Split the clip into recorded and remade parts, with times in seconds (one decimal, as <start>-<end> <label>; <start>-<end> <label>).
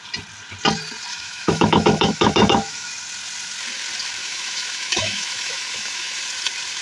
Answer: 0.0-1.1 recorded; 1.1-2.9 remade; 2.9-4.2 recorded; 4.2-6.2 remade; 6.2-6.8 recorded